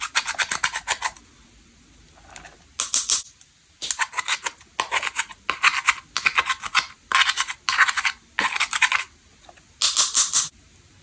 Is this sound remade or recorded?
recorded